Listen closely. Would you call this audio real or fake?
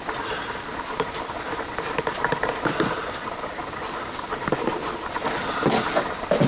real